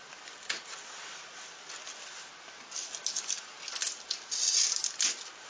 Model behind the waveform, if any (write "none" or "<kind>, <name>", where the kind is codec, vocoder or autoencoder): none